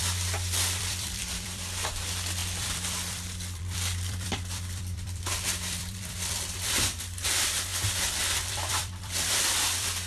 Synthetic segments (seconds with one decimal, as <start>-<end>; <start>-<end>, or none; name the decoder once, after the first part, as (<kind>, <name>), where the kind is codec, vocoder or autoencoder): 0.0-7.7 (vocoder, BigVGAN v2); 8.3-10.1